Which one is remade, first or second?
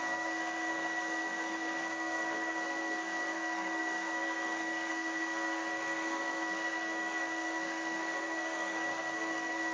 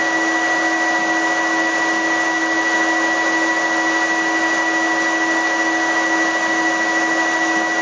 first